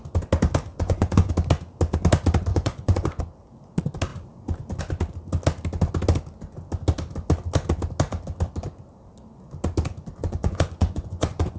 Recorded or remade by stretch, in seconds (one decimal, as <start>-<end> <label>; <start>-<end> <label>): 0.0-0.7 recorded; 0.7-1.3 remade; 1.3-2.5 recorded; 2.5-3.2 remade; 3.2-10.2 recorded; 10.2-11.6 remade